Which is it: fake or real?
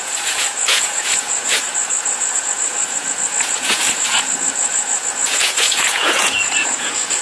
fake